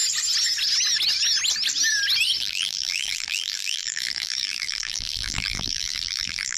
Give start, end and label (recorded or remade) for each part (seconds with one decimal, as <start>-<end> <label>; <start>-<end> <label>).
0.0-2.4 recorded; 2.4-6.6 remade